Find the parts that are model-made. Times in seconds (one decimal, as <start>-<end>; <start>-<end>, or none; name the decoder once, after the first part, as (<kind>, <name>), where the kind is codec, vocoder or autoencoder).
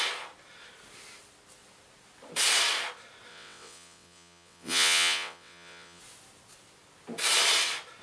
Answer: 3.3-6.0 (vocoder, WaveNeXt)